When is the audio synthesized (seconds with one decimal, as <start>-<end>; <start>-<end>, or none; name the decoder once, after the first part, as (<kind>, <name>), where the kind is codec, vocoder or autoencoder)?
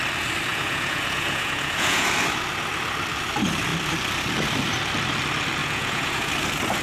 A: 0.5-2.1 (vocoder, Vocos); 5.6-6.3